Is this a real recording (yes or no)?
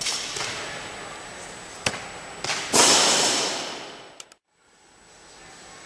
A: yes